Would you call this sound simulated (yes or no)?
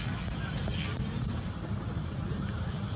yes